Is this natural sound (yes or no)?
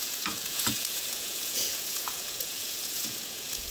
no